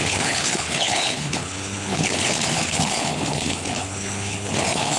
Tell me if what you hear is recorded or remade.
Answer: remade